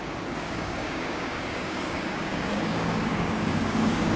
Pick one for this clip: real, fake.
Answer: fake